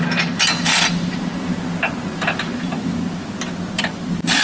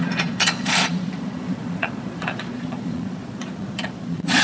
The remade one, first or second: second